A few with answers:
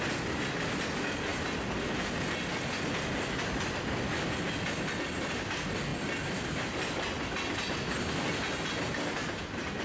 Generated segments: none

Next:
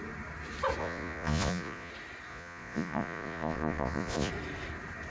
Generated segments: 0.8-1.9 (vocoder, Vocos); 2.3-4.3

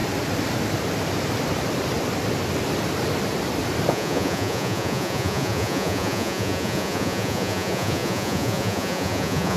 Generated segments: 3.9-9.6 (vocoder, Vocos)

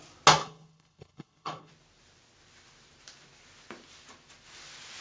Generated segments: 0.4-1.7 (codec, HILCodec)

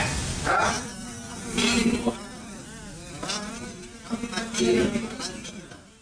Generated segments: none

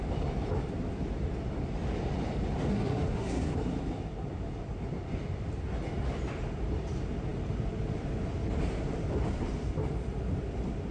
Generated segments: 2.7-3.5 (codec, SNAC)

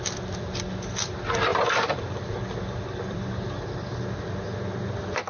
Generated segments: 1.5-3.9 (vocoder, BigVGAN v2)

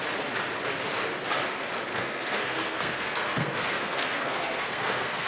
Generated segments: 1.9-5.3 (codec, SNAC)